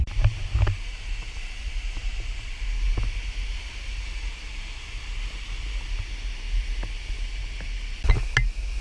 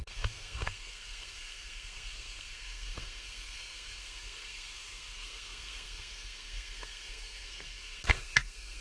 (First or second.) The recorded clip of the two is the first